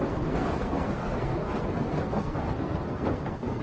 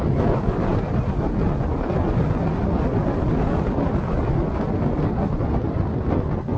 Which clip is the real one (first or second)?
second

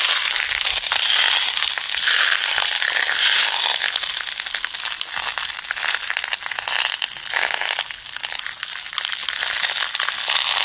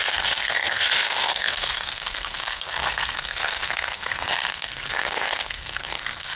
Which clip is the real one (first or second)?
first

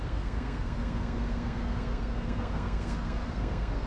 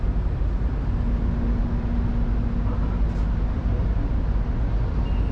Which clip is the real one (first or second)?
second